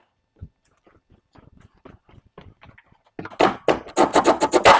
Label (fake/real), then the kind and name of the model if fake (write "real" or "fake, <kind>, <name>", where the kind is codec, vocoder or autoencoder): real